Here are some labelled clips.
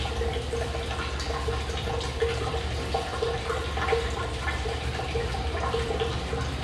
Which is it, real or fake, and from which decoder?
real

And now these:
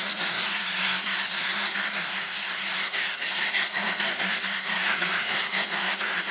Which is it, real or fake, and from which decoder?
fake, codec, SNAC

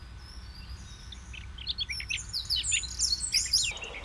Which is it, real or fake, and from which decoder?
real